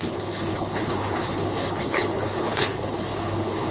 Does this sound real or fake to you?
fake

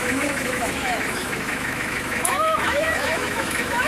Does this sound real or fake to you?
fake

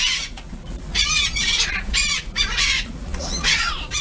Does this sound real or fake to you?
fake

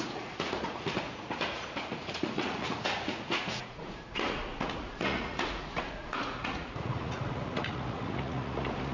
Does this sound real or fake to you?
fake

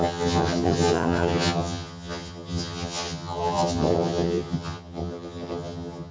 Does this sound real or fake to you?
fake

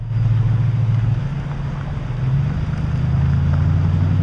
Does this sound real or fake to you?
real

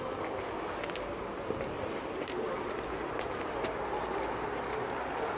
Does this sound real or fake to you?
real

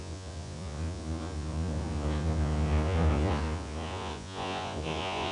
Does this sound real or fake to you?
fake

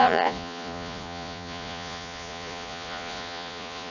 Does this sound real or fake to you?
fake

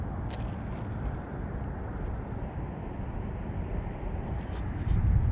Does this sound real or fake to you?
real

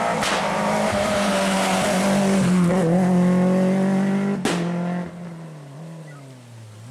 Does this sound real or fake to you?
real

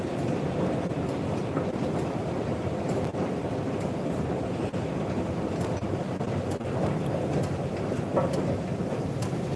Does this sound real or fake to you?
fake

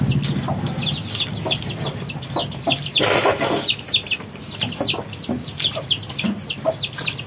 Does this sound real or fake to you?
real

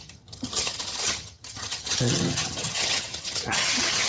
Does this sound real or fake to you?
fake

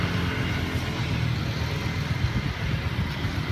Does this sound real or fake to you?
real